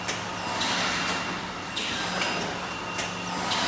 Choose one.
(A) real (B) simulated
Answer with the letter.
A